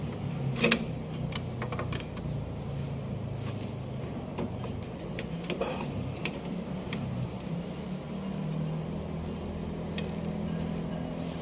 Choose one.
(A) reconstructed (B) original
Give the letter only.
B